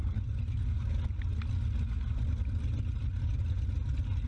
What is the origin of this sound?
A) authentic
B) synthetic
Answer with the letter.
A